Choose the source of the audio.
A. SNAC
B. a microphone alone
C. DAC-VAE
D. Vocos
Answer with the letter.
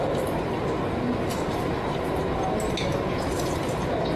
B